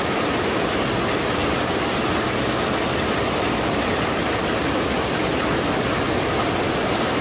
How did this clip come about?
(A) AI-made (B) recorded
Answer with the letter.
B